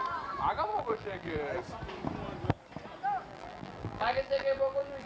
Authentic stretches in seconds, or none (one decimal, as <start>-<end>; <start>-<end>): 0.0-0.7; 1.4-3.3